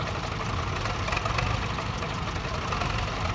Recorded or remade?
recorded